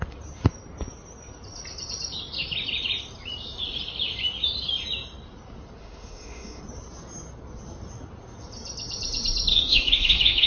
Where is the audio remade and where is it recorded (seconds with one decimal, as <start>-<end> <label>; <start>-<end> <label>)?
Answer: 0.0-5.8 recorded; 5.8-6.6 remade; 6.6-9.5 recorded; 9.5-10.5 remade

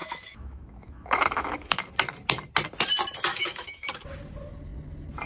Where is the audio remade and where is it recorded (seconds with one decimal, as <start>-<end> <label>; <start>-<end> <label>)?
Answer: 0.0-1.9 remade; 1.9-3.3 recorded; 3.3-3.9 remade; 3.9-5.3 recorded

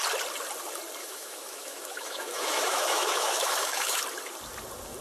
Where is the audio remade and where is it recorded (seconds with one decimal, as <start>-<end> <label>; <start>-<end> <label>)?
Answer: 0.0-1.0 recorded; 1.0-4.0 remade; 4.0-5.0 recorded

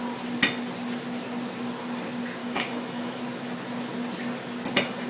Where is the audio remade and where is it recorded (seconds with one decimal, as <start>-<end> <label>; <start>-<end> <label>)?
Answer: 0.0-2.4 recorded; 2.4-3.2 remade; 3.2-5.1 recorded

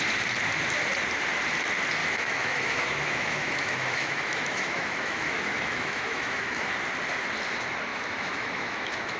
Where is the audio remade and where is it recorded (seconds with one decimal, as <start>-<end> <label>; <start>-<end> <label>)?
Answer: 0.0-2.0 recorded; 2.0-6.7 remade; 6.7-7.9 recorded; 7.9-9.2 remade

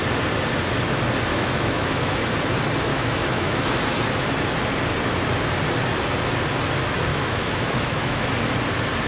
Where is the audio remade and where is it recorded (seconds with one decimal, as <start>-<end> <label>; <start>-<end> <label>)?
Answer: 0.0-1.3 recorded; 1.3-2.1 remade; 2.1-2.9 recorded; 2.9-3.8 remade; 3.8-7.1 recorded; 7.1-8.3 remade; 8.3-9.1 recorded

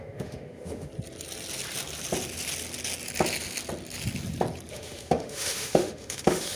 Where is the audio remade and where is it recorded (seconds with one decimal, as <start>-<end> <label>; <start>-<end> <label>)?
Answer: 0.0-0.9 remade; 0.9-4.7 recorded; 4.7-6.6 remade

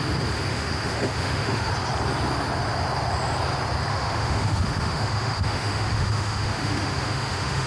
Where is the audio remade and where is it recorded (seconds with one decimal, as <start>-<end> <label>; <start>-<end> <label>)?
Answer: 0.0-0.5 recorded; 0.5-1.7 remade; 1.7-3.9 recorded; 3.9-7.7 remade